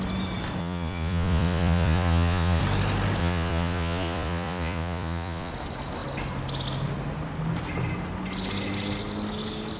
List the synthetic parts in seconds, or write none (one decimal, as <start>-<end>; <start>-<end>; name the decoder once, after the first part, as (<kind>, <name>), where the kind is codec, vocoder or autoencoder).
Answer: 0.6-2.6 (vocoder, Vocos); 3.2-5.5